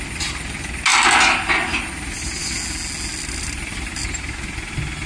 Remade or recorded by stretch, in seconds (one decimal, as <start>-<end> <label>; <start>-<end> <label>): 0.0-5.1 recorded